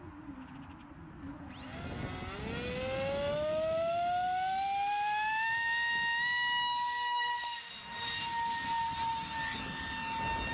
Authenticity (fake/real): real